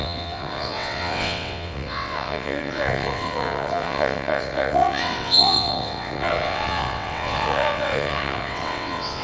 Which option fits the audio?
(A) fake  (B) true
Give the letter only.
A